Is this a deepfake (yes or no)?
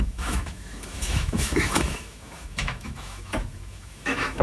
yes